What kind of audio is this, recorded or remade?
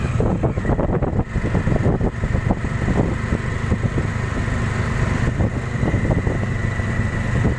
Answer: recorded